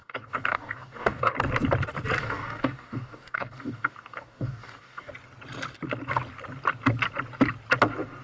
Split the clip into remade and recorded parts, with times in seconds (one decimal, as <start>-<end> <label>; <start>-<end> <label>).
0.0-1.3 remade; 1.3-2.2 recorded; 2.2-5.1 remade; 5.1-8.2 recorded